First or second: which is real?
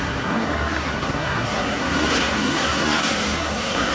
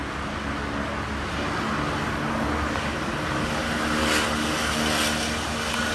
second